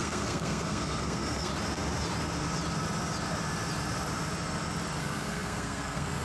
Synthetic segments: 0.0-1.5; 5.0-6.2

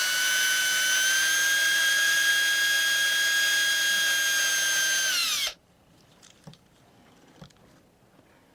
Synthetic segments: 1.6-2.3; 5.2-6.9

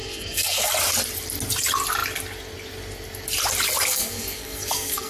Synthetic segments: 0.0-0.7; 3.9-5.1

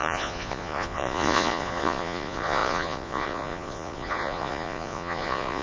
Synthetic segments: 0.0-5.6